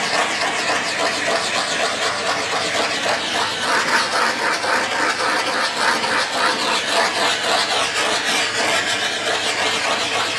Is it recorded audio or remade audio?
recorded